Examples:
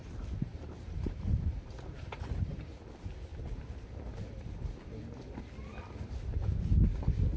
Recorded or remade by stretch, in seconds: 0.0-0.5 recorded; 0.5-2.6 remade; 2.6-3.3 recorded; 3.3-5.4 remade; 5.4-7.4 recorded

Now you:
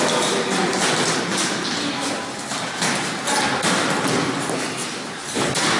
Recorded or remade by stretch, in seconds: 0.0-5.8 recorded

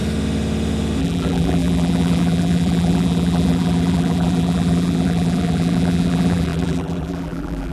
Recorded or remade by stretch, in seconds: 0.0-1.0 recorded; 1.0-7.7 remade

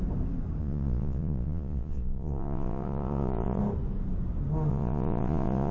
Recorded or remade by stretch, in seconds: 0.0-0.6 recorded; 0.6-3.6 remade; 3.6-4.7 recorded; 4.7-5.7 remade

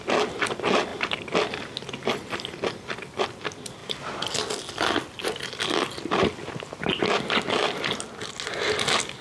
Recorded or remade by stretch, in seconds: 0.0-9.2 recorded

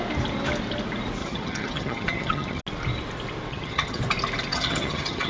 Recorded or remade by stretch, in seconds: 0.0-1.2 recorded; 1.2-2.6 remade; 2.6-3.5 recorded; 3.5-4.0 remade; 4.0-4.5 recorded; 4.5-5.3 remade

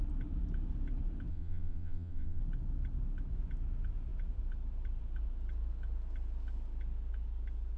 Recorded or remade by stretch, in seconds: 0.0-1.3 recorded; 1.3-2.4 remade; 2.4-7.8 recorded

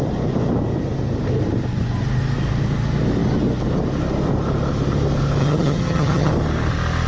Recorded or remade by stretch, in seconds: 0.0-5.4 recorded; 5.4-6.3 remade; 6.3-7.1 recorded